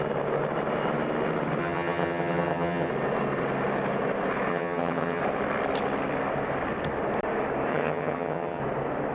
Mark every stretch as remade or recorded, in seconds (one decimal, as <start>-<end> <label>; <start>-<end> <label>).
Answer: 0.0-1.6 recorded; 1.6-2.9 remade; 2.9-4.5 recorded; 4.5-5.2 remade; 5.2-7.7 recorded; 7.7-8.6 remade; 8.6-9.1 recorded